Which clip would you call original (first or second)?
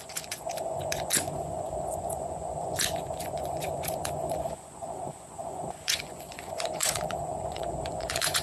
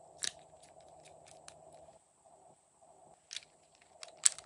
second